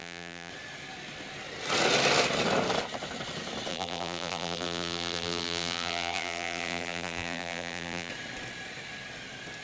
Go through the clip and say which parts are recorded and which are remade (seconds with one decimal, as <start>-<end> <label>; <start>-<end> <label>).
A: 0.0-0.5 remade; 0.5-3.7 recorded; 3.7-8.1 remade; 8.1-9.6 recorded